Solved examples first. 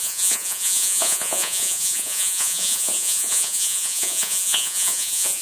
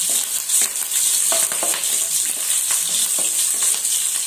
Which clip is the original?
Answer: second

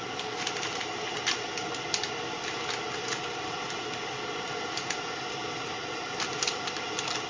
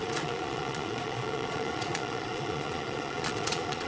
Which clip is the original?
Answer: first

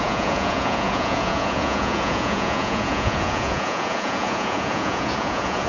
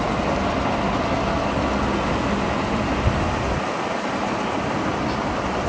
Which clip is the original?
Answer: second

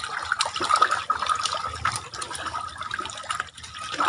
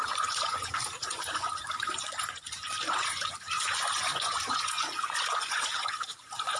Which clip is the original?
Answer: first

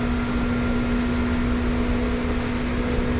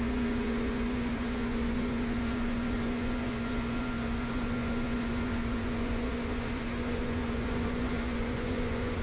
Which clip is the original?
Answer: first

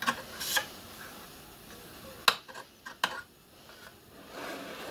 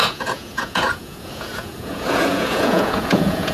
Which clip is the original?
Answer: first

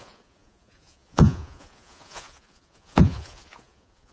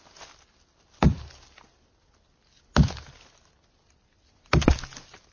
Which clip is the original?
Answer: second